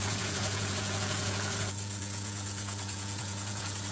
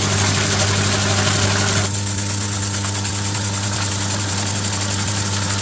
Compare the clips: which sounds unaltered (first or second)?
second